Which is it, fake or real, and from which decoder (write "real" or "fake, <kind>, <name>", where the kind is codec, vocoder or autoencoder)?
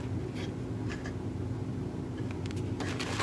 real